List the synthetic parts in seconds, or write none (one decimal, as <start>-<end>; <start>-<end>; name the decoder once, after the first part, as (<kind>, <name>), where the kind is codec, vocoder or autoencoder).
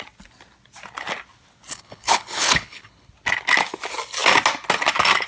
1.7-3.1 (codec, HILCodec)